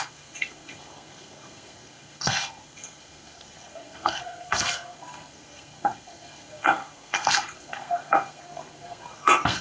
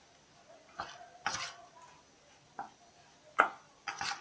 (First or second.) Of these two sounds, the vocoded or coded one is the first